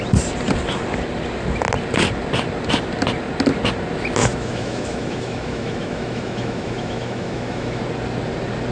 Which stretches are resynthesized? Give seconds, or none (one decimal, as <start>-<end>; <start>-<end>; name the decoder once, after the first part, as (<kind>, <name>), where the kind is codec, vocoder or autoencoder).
4.2-7.8 (autoencoder, DAC-VAE)